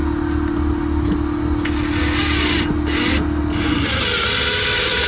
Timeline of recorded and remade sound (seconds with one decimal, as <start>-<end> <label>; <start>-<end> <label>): 0.0-5.1 recorded